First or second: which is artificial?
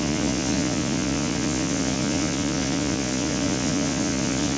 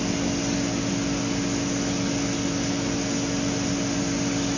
first